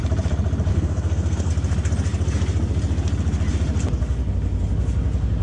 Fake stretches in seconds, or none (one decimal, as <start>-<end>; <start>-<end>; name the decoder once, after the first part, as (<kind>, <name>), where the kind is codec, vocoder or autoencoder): 0.7-1.5 (codec, SNAC)